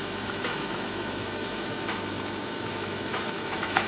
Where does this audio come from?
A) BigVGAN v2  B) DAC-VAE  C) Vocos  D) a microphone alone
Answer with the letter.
B